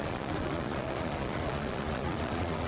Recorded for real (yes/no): no